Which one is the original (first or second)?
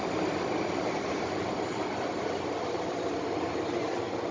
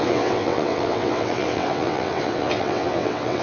first